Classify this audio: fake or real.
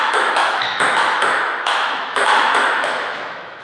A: fake